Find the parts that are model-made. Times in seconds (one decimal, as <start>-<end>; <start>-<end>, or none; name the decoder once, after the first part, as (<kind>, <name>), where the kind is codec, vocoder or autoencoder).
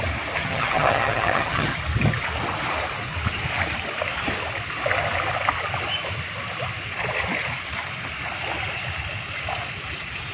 0.4-1.8 (vocoder, HiFi-GAN)